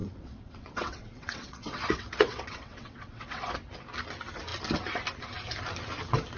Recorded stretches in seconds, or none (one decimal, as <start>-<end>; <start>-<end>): 3.5-6.4